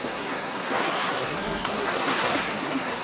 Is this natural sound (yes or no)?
no